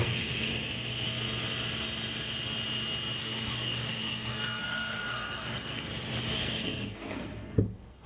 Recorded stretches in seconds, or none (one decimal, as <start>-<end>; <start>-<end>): 0.5-3.2; 5.9-6.4